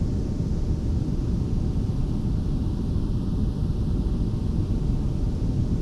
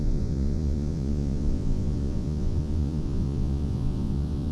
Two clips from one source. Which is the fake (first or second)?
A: second